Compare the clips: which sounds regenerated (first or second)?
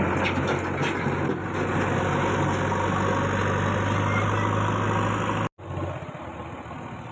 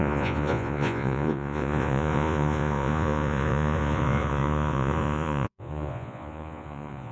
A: second